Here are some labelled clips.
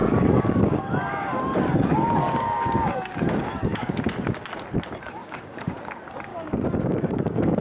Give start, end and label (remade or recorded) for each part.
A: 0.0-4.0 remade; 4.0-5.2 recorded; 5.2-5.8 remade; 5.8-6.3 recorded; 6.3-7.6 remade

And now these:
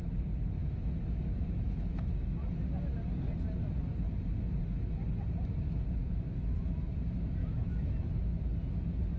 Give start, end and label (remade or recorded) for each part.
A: 0.0-0.6 recorded; 0.6-2.5 remade; 2.5-6.0 recorded; 6.0-6.9 remade; 6.9-7.4 recorded; 7.4-7.9 remade; 7.9-9.2 recorded

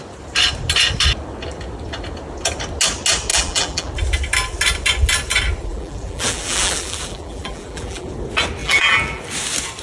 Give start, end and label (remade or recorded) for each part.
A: 0.0-3.3 recorded; 3.3-3.9 remade; 3.9-5.7 recorded; 5.7-8.1 remade; 8.1-8.6 recorded; 8.6-9.2 remade; 9.2-9.8 recorded